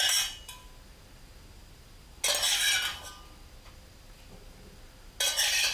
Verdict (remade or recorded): recorded